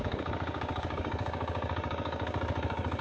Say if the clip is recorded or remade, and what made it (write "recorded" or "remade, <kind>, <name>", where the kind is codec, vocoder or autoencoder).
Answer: remade, codec, DAC